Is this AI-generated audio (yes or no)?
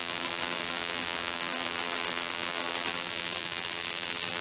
yes